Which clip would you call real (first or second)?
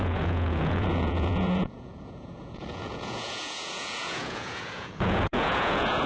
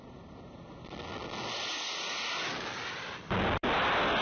second